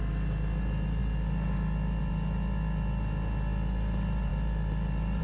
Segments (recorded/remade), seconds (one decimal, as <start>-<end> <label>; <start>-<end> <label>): 0.0-5.2 recorded